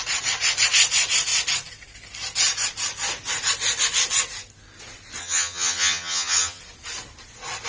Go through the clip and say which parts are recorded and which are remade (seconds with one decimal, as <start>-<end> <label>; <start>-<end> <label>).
0.0-5.2 recorded; 5.2-6.6 remade; 6.6-7.7 recorded